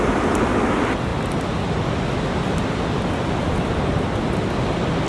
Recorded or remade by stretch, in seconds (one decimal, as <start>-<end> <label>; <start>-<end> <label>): 0.0-5.1 recorded